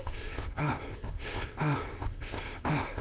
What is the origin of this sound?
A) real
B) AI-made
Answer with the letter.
B